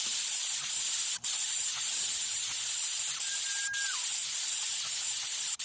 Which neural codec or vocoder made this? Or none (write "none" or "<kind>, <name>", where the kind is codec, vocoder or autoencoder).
none